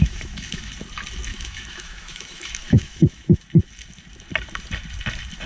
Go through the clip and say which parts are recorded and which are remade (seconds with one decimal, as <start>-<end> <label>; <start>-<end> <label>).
0.0-0.7 remade; 0.7-1.3 recorded; 1.3-3.4 remade; 3.4-5.5 recorded